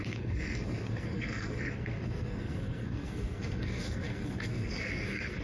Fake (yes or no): yes